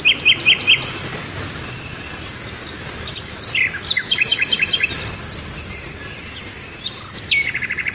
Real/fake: real